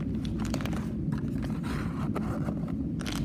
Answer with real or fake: real